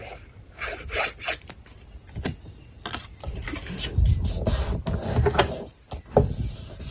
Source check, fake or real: real